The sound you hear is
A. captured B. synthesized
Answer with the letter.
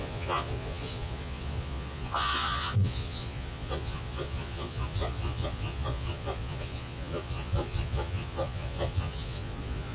B